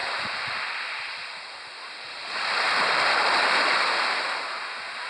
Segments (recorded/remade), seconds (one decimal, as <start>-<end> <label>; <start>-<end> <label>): 0.0-0.7 remade; 0.7-1.2 recorded; 1.2-3.9 remade; 3.9-5.1 recorded